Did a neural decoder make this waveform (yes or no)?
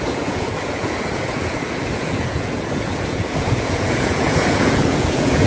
yes